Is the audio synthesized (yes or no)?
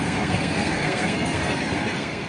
yes